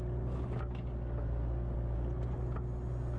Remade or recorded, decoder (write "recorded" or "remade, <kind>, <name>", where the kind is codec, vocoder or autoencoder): recorded